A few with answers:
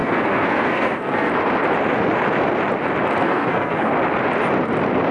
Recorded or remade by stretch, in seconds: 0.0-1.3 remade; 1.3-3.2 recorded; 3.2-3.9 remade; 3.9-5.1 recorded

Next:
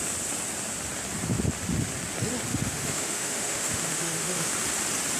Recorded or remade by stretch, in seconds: 0.0-2.5 recorded; 2.5-4.5 remade; 4.5-5.2 recorded

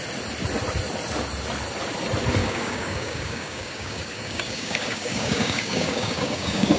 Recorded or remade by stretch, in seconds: 0.0-2.4 recorded; 2.4-6.8 remade

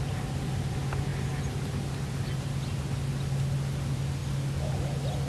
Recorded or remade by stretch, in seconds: 0.0-5.3 recorded

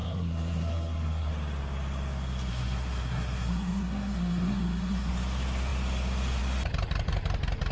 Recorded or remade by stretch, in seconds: 0.0-1.3 remade; 1.3-2.5 recorded; 2.5-5.1 remade; 5.1-7.7 recorded